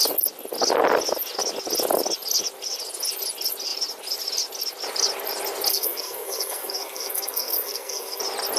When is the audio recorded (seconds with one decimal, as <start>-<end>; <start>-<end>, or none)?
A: 0.0-5.7; 8.2-8.6